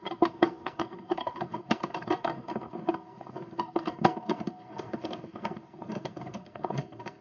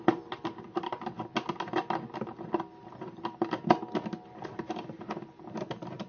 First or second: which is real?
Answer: second